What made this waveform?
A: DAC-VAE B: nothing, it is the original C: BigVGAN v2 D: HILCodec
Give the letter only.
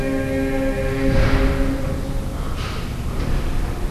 B